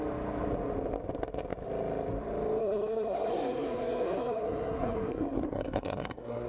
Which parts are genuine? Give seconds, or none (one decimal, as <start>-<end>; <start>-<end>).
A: 0.0-2.6